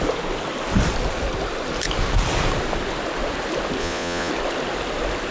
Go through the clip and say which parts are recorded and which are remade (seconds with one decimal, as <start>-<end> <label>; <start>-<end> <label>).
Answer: 0.0-3.8 recorded; 3.8-4.3 remade; 4.3-5.3 recorded